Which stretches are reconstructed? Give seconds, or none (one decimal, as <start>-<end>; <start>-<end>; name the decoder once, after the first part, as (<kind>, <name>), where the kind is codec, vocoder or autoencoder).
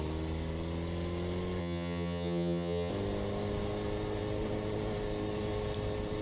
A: 1.6-2.9 (vocoder, HiFi-GAN)